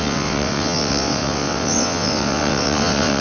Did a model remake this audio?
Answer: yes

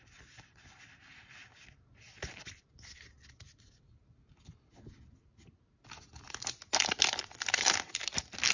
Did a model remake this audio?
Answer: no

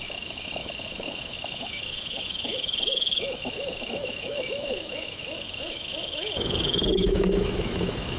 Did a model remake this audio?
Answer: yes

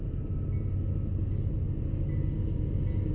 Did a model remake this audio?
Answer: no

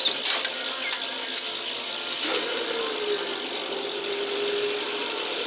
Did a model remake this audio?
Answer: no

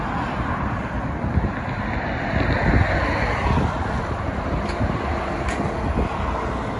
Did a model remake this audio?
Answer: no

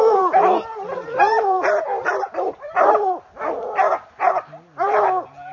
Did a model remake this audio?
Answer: yes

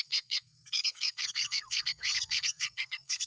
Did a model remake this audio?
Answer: yes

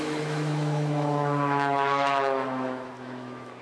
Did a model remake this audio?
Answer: yes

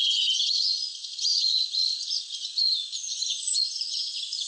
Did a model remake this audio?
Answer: yes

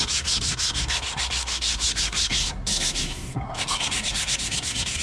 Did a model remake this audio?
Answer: yes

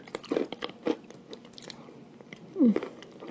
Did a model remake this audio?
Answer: no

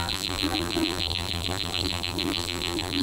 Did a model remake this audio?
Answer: yes